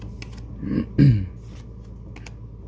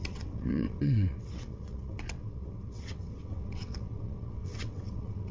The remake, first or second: second